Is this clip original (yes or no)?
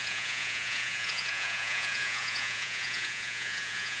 no